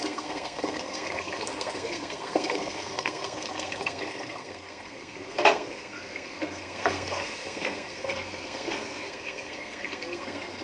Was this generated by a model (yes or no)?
yes